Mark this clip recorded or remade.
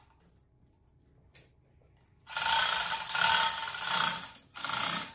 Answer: recorded